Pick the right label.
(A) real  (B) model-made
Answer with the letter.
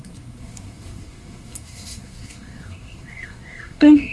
B